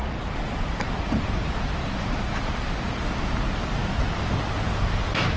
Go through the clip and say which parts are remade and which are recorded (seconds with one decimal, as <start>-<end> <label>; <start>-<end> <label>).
0.0-3.2 remade; 3.2-5.4 recorded

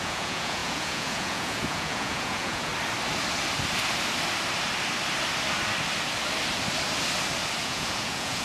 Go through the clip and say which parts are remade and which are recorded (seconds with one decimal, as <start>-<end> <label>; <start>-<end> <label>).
0.0-2.7 remade; 2.7-7.6 recorded; 7.6-8.4 remade

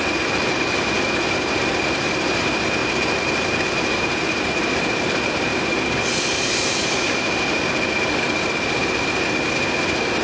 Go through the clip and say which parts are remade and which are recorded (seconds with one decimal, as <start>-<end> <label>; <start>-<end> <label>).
0.0-5.5 recorded; 5.5-7.4 remade; 7.4-10.2 recorded

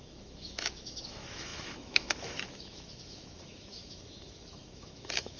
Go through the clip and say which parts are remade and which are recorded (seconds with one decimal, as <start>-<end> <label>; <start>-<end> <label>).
0.0-5.4 remade

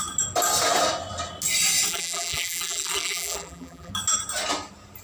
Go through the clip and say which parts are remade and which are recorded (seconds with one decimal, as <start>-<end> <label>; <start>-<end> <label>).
0.0-1.9 recorded; 1.9-3.9 remade; 3.9-5.0 recorded